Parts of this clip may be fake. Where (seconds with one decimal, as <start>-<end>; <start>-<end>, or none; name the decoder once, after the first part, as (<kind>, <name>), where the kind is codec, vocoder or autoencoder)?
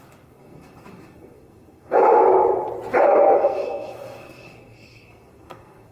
0.0-2.2 (codec, SNAC); 3.0-5.9